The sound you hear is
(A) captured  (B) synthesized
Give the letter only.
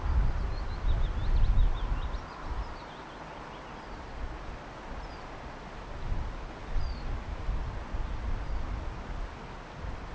A